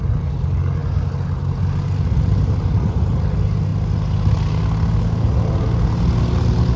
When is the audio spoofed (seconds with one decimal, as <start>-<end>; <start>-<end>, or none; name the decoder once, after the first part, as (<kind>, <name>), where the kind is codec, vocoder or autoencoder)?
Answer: none